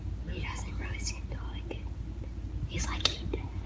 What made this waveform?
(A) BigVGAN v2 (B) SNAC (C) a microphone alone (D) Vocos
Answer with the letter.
C